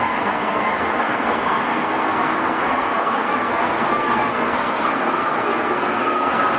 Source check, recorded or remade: remade